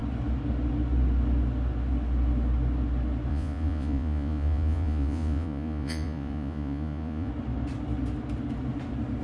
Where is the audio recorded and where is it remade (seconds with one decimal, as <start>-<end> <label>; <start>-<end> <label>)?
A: 0.0-3.3 recorded; 3.3-7.3 remade; 7.3-9.2 recorded

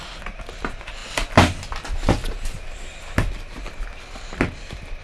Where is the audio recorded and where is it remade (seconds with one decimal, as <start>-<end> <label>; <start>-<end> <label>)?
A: 0.0-5.0 recorded

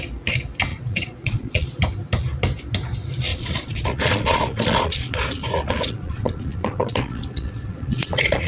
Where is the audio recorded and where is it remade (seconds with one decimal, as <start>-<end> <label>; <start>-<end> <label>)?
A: 0.0-0.7 recorded; 0.7-1.8 remade; 1.8-3.3 recorded; 3.3-8.5 remade

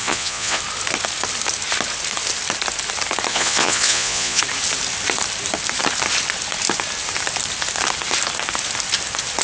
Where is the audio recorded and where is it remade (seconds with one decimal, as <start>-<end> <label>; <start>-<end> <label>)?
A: 0.0-0.6 remade; 0.6-3.3 recorded; 3.3-4.4 remade; 4.4-9.4 recorded

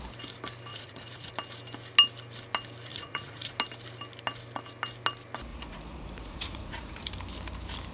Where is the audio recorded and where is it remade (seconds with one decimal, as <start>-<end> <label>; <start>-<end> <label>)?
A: 0.0-0.7 recorded; 0.7-1.3 remade; 1.3-2.9 recorded; 2.9-3.5 remade; 3.5-5.5 recorded; 5.5-7.0 remade; 7.0-7.9 recorded